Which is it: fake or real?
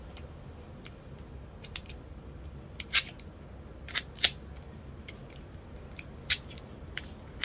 real